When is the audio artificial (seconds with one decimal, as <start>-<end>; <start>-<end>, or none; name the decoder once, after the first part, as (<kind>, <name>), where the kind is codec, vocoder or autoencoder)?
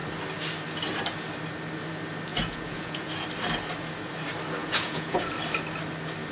2.3-3.1 (vocoder, Vocos); 4.6-5.3